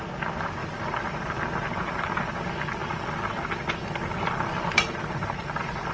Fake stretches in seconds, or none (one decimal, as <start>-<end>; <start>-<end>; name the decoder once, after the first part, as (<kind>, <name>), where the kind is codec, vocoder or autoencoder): 0.6-1.8 (vocoder, BigVGAN v2); 2.8-5.9